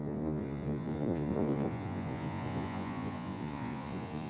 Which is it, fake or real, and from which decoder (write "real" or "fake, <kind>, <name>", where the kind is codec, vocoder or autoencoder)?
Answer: fake, vocoder, Vocos